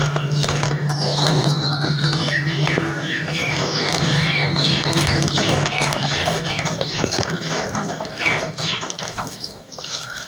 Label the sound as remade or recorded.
remade